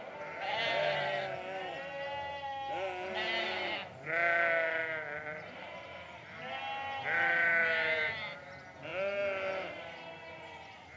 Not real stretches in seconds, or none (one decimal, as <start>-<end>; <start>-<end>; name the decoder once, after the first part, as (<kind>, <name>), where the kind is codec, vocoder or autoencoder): none